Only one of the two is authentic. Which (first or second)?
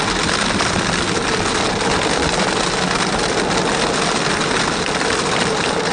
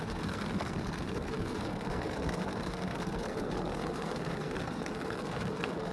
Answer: first